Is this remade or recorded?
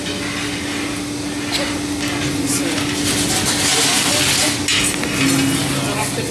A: recorded